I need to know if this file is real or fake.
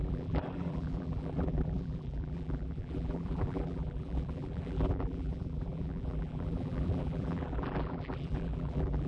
fake